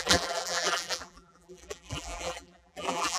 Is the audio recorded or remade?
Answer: remade